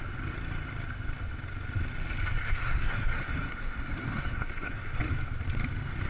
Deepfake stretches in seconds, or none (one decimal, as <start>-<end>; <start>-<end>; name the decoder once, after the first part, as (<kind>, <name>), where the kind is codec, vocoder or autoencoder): 2.4-5.0 (codec, SNAC)